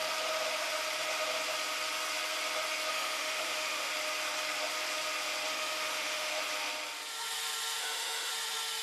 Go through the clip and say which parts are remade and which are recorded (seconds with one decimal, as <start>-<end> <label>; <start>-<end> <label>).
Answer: 0.0-2.9 recorded; 2.9-3.9 remade; 3.9-5.5 recorded; 5.5-6.3 remade; 6.3-7.8 recorded; 7.8-8.3 remade; 8.3-8.8 recorded